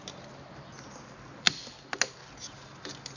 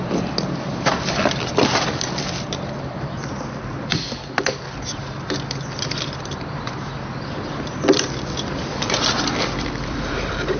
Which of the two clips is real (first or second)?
first